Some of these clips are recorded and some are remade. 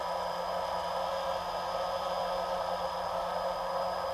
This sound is recorded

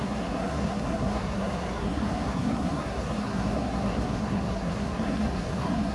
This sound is remade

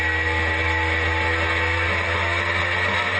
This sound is recorded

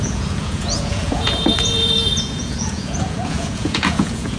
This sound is remade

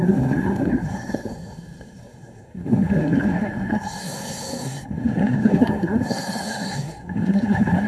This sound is remade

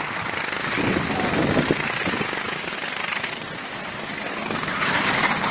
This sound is recorded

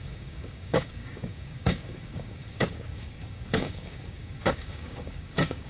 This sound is remade